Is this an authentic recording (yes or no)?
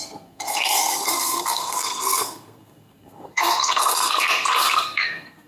no